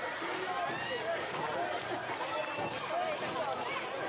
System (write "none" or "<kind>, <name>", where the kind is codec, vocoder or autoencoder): none